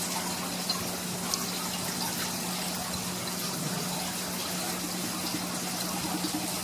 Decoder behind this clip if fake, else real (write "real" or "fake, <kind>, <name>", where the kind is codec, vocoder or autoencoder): real